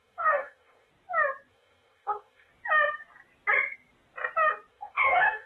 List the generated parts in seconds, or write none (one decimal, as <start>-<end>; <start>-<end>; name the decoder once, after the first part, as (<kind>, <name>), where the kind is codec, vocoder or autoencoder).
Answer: 0.0-0.9 (codec, DAC); 1.5-2.5; 4.7-5.5